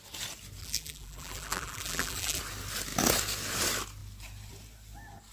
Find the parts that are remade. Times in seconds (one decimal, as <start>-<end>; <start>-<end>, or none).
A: 0.6-2.4